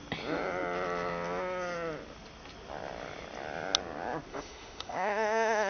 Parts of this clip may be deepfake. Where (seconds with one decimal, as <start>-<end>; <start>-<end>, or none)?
4.3-5.7